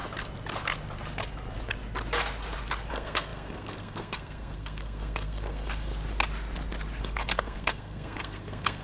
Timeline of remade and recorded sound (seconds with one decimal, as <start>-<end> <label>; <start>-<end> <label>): 0.0-2.9 recorded; 2.9-5.9 remade; 5.9-7.0 recorded; 7.0-8.8 remade